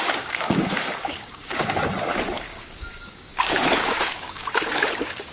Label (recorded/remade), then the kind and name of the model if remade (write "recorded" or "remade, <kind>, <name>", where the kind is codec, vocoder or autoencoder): remade, codec, DAC